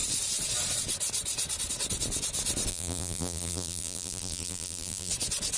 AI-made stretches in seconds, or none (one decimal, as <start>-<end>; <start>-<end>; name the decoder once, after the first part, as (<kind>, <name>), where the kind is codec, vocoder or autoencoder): 2.7-5.1 (vocoder, BigVGAN v2)